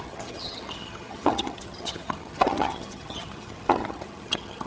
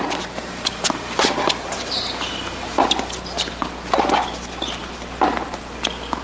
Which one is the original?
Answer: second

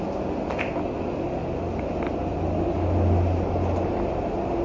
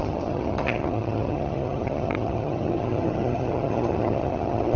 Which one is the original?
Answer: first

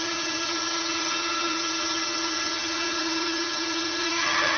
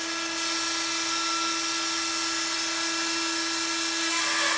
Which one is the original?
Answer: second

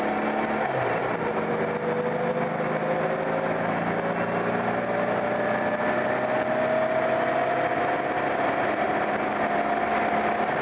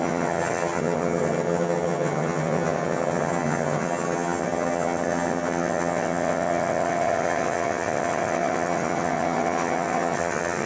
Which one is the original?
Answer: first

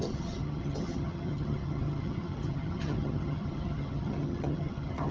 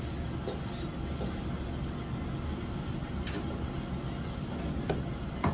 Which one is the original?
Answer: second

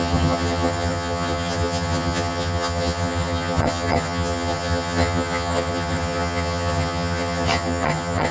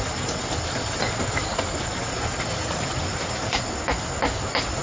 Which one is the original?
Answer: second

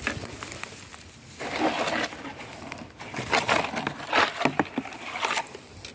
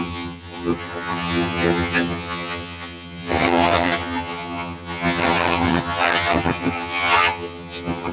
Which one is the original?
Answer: first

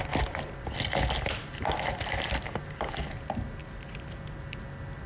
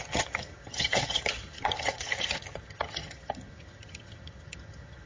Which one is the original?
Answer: first